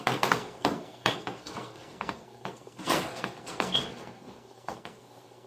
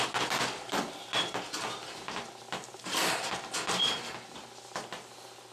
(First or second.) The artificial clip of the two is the first